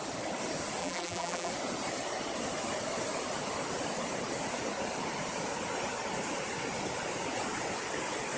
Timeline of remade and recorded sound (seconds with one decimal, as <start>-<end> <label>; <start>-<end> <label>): 0.0-0.8 recorded; 0.8-1.5 remade; 1.5-8.4 recorded